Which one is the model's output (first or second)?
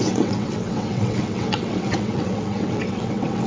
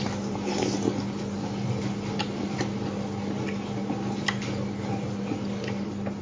first